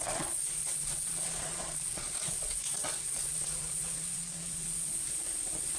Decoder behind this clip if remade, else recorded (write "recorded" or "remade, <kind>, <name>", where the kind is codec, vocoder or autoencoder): remade, vocoder, Vocos